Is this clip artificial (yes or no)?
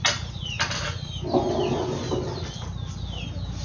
no